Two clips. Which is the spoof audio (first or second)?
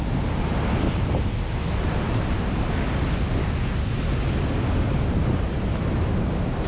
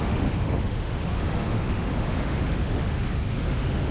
second